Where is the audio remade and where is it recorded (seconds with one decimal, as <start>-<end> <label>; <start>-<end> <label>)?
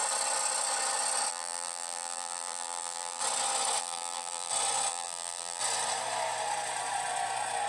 0.0-1.3 recorded; 1.3-3.2 remade; 3.2-3.8 recorded; 3.8-4.5 remade; 4.5-4.9 recorded; 4.9-5.6 remade; 5.6-7.7 recorded